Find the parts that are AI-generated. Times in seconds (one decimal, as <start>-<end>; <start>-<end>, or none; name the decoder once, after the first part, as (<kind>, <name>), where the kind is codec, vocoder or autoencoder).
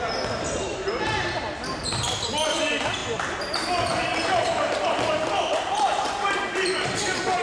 3.0-7.4 (vocoder, BigVGAN v2)